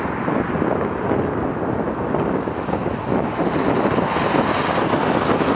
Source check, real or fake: real